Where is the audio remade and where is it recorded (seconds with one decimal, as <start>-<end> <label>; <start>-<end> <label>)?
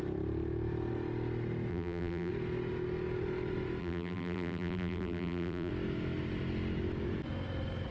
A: 0.0-1.7 recorded; 1.7-2.3 remade; 2.3-3.8 recorded; 3.8-5.7 remade; 5.7-7.9 recorded